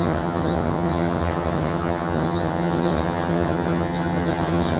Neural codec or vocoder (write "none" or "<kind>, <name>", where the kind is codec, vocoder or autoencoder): vocoder, HiFi-GAN